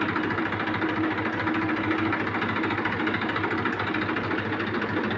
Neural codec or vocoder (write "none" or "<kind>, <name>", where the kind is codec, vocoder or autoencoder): none